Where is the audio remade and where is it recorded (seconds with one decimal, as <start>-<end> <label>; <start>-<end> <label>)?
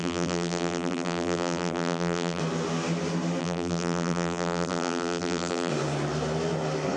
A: 0.0-2.4 remade; 2.4-3.4 recorded; 3.4-5.7 remade; 5.7-7.0 recorded